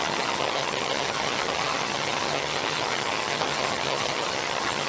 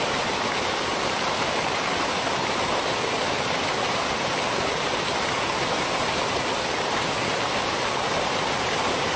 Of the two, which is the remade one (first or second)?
first